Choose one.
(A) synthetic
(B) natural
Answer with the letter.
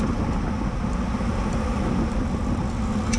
B